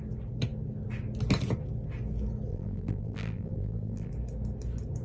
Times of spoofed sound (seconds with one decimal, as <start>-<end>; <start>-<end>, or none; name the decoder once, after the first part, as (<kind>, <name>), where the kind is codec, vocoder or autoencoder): 2.5-4.1 (vocoder, BigVGAN v2)